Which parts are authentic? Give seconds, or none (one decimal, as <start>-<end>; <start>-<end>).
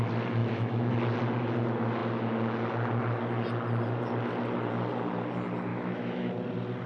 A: 0.0-0.4; 0.9-5.7; 6.3-6.9